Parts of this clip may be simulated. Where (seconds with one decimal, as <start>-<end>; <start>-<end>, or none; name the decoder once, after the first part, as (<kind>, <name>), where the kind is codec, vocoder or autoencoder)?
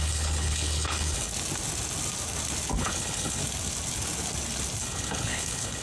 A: 0.0-1.3 (codec, HILCodec); 2.8-3.4; 4.8-5.8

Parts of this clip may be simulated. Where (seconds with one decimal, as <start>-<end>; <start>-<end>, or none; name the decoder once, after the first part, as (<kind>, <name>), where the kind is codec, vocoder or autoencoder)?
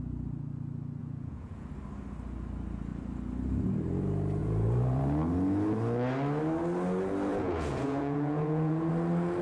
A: 1.0-1.7 (vocoder, Vocos); 4.4-5.0; 7.3-8.9